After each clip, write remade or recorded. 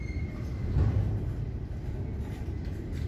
recorded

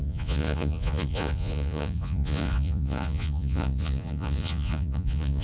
remade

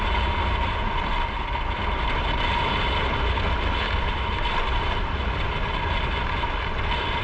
recorded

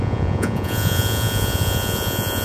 remade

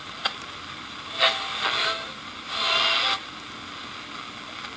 recorded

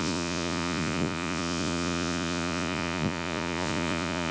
remade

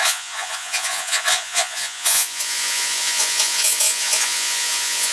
remade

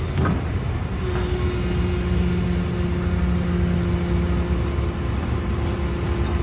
recorded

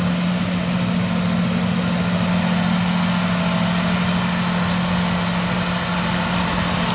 recorded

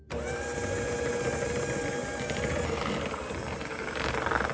recorded